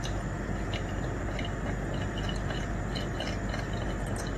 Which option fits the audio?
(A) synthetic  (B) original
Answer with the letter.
B